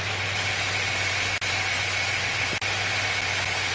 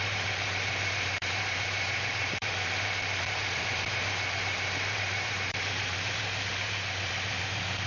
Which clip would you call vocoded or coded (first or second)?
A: second